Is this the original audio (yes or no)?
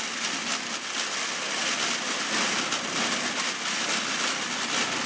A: yes